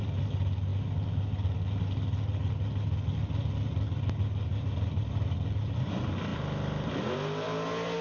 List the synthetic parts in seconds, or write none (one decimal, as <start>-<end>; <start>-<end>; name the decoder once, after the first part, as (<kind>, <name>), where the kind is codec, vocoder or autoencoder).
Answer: none